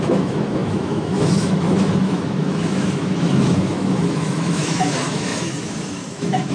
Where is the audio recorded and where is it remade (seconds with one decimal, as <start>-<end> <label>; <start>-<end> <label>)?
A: 0.0-6.5 remade